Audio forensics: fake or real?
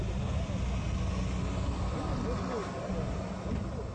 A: real